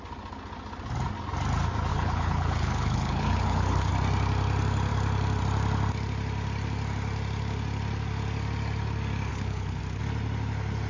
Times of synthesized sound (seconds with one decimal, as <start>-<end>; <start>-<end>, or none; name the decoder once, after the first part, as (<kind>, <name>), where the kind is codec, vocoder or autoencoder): 1.9-3.9 (codec, HILCodec); 9.3-9.8